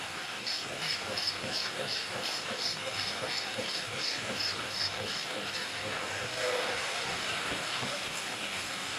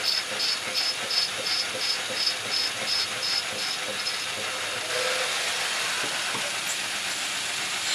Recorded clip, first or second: second